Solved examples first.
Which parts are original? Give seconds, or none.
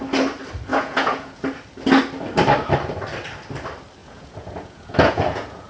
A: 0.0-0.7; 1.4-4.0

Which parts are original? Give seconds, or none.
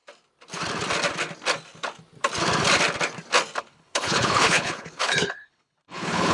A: 0.0-3.6